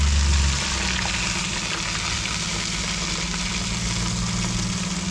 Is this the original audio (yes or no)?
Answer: yes